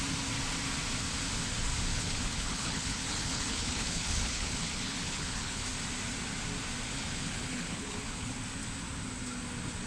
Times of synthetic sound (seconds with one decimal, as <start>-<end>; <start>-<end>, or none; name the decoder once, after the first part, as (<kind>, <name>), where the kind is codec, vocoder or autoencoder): 1.9-5.6 (codec, HILCodec); 6.9-8.3